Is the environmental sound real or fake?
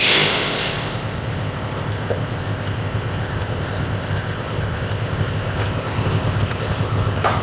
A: fake